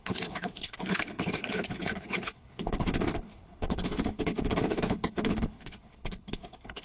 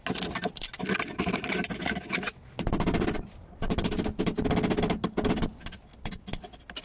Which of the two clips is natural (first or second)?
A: second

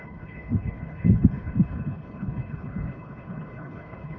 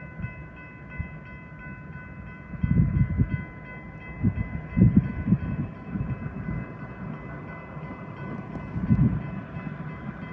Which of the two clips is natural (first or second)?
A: second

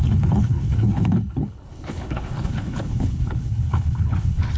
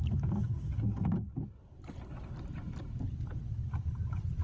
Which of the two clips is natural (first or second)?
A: second